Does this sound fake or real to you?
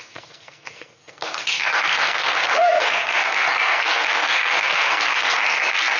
fake